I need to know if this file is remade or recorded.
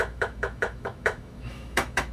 remade